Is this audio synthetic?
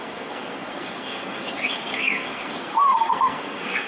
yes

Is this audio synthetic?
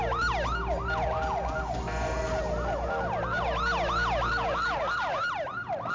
no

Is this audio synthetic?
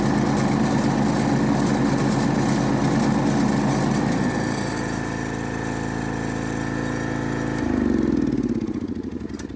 no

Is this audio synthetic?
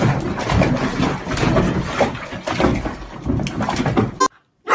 no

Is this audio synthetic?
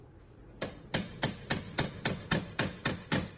no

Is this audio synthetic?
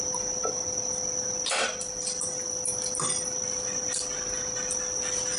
no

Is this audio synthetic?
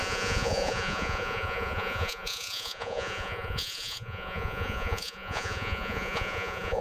yes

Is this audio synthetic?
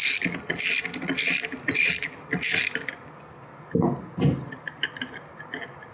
no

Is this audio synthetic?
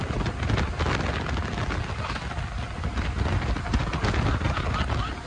no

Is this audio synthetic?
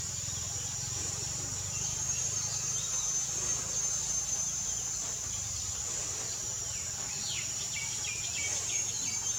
no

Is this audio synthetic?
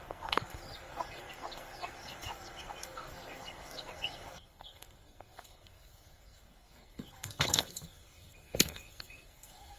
yes